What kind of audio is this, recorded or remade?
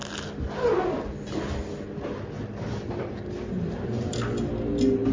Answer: recorded